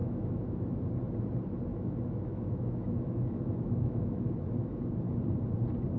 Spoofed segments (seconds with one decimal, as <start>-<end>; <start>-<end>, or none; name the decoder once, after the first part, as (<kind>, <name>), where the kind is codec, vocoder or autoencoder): 0.0-0.8 (autoencoder, DAC-VAE); 1.7-4.8